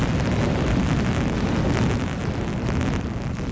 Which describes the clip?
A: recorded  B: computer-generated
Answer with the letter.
A